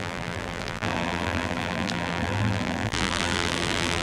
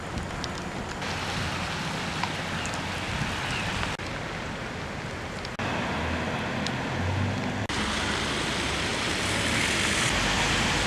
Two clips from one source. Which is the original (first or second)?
second